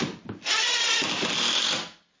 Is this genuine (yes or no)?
yes